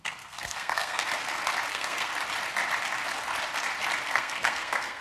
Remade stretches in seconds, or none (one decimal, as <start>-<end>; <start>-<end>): 0.0-1.0; 1.7-2.1; 4.1-5.0